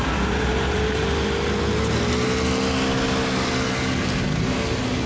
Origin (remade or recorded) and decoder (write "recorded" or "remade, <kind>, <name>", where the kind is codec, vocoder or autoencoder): recorded